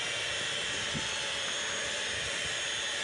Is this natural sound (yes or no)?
yes